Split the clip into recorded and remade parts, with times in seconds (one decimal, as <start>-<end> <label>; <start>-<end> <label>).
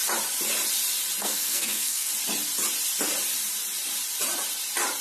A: 0.0-1.2 recorded; 1.2-2.1 remade; 2.1-5.0 recorded